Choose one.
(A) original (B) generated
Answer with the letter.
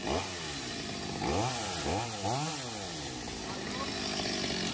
A